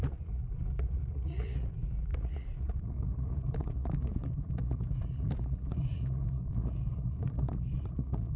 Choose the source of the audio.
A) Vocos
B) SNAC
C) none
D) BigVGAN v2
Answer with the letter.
A